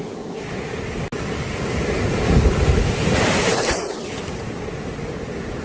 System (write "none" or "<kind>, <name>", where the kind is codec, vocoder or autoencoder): none